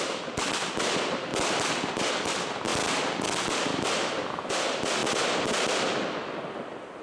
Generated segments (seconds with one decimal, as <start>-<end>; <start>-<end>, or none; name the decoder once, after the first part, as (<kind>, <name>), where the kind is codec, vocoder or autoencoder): none